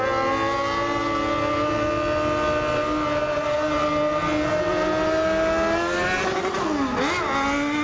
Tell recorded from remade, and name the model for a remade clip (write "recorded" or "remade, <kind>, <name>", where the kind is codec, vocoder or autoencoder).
recorded